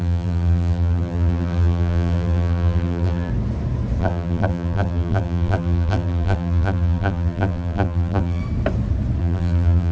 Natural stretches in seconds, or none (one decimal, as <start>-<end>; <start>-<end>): 3.3-4.0; 8.4-9.2